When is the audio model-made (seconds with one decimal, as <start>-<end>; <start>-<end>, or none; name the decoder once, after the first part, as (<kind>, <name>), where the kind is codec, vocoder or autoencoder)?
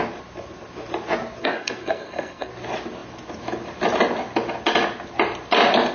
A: 1.4-2.5 (codec, SNAC)